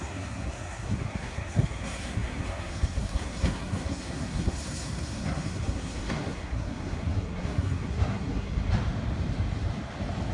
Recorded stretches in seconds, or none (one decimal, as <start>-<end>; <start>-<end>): 8.6-10.3